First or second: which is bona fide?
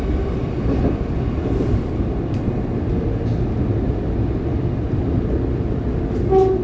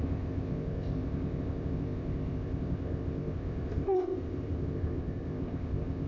first